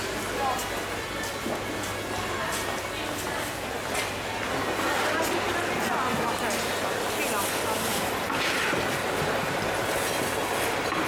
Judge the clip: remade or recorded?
recorded